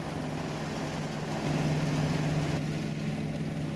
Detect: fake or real real